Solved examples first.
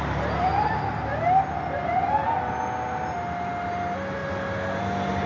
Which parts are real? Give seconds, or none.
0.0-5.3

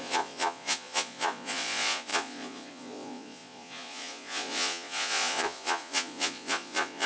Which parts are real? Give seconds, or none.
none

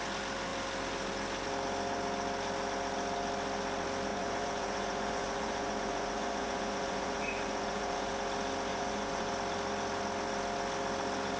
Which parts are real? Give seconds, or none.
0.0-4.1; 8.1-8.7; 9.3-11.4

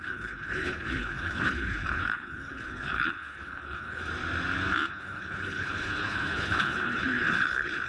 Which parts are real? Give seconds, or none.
4.0-4.9

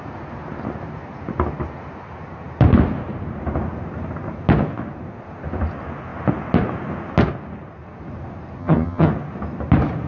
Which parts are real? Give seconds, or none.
0.0-8.6; 9.1-10.1